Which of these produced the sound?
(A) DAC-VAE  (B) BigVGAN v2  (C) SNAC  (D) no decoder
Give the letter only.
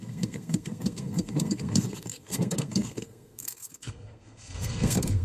C